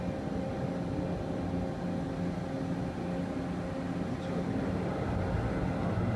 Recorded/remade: recorded